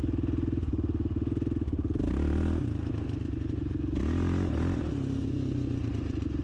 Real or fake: real